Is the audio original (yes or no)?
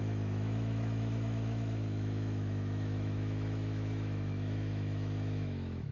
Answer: no